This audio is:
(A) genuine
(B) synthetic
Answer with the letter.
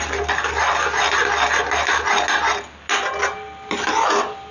A